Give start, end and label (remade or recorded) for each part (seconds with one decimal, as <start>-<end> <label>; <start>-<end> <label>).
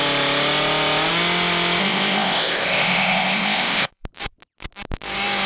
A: 0.0-1.8 recorded; 1.8-3.9 remade; 3.9-5.5 recorded